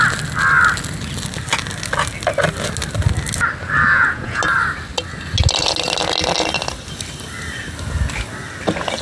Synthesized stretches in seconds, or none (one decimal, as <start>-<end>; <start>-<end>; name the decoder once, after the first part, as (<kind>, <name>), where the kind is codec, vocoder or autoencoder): 3.9-4.4 (vocoder, Vocos)